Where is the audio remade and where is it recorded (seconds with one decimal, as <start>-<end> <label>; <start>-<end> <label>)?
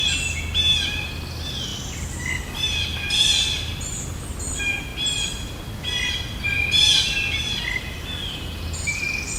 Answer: 0.0-9.4 recorded